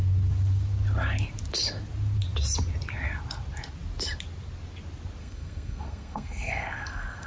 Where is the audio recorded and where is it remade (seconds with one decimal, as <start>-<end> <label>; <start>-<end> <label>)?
0.0-5.2 recorded; 5.2-7.3 remade